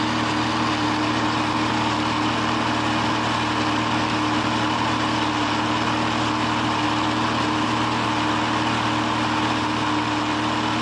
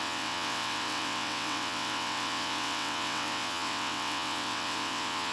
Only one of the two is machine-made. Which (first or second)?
second